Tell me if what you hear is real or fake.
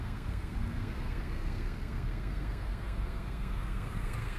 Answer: fake